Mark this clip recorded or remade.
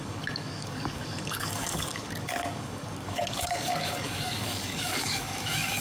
remade